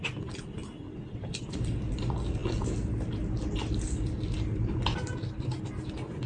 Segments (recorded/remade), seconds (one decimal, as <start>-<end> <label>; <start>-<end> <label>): 0.0-6.3 recorded